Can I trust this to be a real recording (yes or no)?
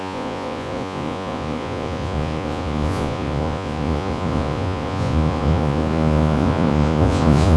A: no